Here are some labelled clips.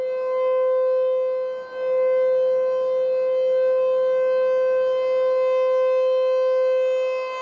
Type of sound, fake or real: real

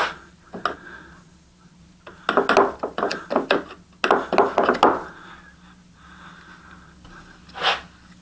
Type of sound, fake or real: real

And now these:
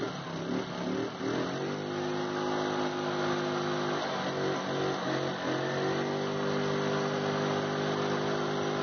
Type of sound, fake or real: real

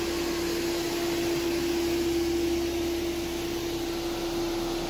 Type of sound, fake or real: real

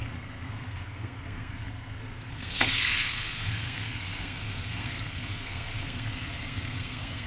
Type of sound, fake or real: fake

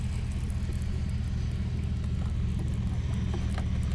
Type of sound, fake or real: real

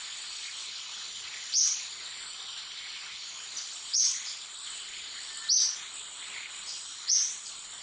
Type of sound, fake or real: real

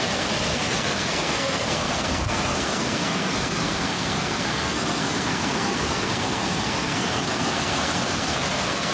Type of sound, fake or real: fake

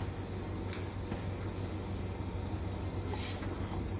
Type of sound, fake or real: real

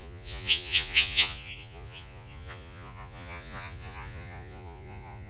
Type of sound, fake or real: fake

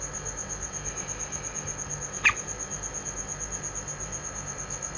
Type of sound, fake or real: real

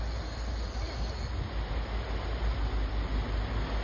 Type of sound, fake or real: real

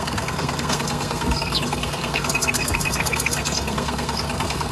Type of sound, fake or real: fake